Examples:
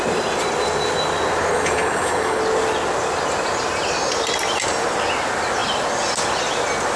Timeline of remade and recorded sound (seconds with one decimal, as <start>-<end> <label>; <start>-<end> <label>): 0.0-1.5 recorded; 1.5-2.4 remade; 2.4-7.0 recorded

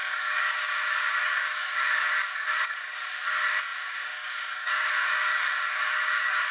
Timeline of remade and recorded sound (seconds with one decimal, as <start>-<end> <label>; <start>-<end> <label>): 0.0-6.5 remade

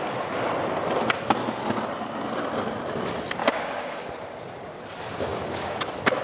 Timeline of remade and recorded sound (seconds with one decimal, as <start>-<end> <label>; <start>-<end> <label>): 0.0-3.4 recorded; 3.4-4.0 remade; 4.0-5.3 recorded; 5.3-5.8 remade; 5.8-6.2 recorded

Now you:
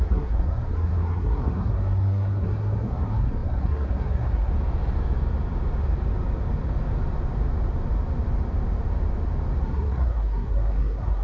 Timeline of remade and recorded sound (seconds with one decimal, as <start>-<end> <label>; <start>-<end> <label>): 0.0-4.5 remade; 4.5-9.6 recorded; 9.6-11.2 remade

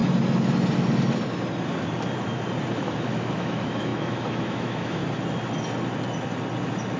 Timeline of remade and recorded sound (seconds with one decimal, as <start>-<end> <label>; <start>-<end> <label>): 0.0-2.8 recorded; 2.8-5.0 remade; 5.0-7.0 recorded

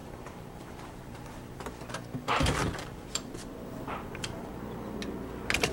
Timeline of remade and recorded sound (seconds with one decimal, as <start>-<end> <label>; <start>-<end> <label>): 0.0-1.6 remade; 1.6-2.6 recorded; 2.6-4.5 remade; 4.5-5.7 recorded

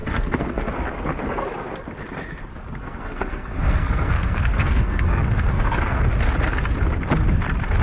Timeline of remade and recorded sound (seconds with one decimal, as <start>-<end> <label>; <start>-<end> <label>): 0.0-0.7 remade; 0.7-2.8 recorded; 2.8-6.0 remade; 6.0-7.8 recorded